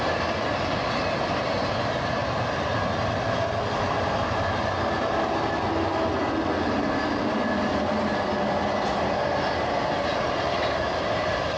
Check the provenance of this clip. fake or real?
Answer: real